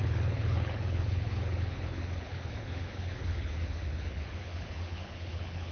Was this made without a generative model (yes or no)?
no